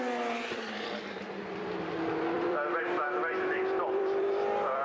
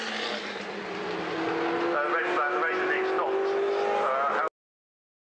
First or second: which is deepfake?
first